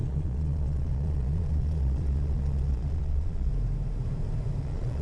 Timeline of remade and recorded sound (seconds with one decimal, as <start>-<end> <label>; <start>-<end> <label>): 0.0-3.5 remade; 3.5-4.6 recorded; 4.6-5.0 remade

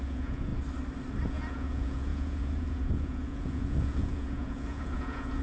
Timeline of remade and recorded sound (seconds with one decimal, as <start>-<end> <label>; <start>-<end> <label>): 0.0-0.5 remade; 0.5-1.3 recorded; 1.3-5.4 remade

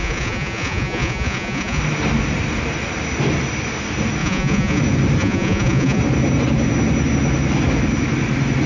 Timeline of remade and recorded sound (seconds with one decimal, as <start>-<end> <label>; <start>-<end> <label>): 0.0-1.8 remade; 1.8-4.2 recorded; 4.2-4.8 remade; 4.8-5.2 recorded; 5.2-6.0 remade; 6.0-8.7 recorded

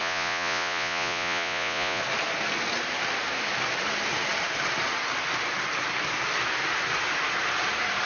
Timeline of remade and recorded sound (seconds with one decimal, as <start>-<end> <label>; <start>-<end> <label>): 0.0-2.0 remade; 2.0-8.1 recorded

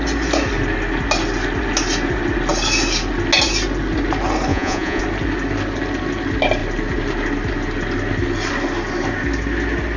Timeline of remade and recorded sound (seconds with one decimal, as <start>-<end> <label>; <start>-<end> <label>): 0.0-4.5 recorded; 4.5-5.0 remade; 5.0-10.0 recorded

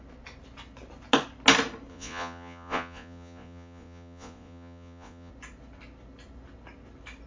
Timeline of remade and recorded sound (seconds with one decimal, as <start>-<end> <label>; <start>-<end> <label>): 0.0-1.9 recorded; 1.9-5.3 remade; 5.3-7.3 recorded

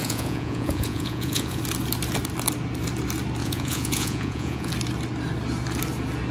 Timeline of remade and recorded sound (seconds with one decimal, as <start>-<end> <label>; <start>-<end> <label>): 0.0-1.6 remade; 1.6-3.4 recorded; 3.4-4.7 remade; 4.7-6.3 recorded

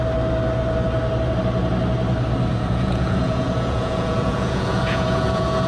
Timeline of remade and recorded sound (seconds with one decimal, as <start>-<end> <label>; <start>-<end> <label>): 0.0-2.5 recorded; 2.5-5.7 remade